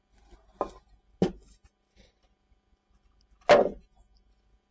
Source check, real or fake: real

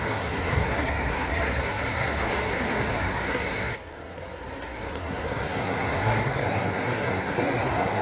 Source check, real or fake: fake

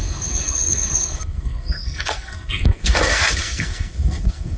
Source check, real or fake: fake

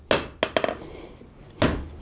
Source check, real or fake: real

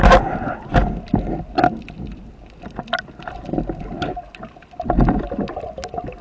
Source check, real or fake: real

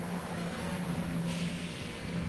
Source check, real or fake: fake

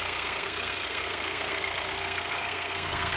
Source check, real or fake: fake